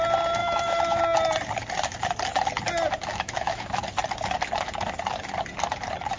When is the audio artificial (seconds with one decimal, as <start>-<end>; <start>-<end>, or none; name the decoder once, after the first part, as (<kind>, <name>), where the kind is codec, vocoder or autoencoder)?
0.4-1.0 (autoencoder, DAC-VAE); 3.1-3.8